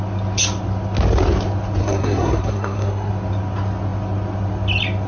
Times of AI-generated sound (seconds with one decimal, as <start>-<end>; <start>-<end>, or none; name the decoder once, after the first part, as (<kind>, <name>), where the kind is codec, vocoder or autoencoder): 1.8-3.1 (codec, SNAC)